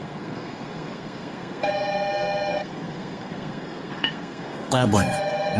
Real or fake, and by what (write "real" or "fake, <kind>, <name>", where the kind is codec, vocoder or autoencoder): fake, codec, SNAC